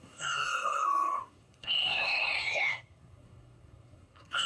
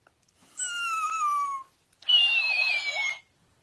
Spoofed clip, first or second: first